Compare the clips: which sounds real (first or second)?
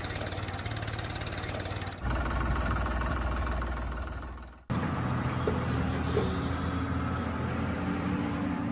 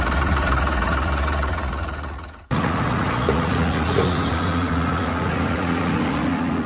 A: first